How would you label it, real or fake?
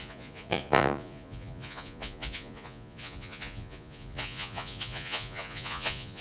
fake